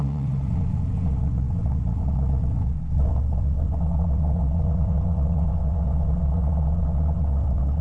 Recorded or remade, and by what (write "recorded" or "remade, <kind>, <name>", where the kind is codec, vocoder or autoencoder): remade, vocoder, WaveNeXt